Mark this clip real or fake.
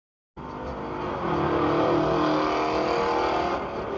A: real